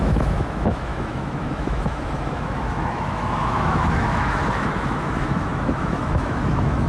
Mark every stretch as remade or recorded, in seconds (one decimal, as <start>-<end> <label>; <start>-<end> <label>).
0.0-6.9 remade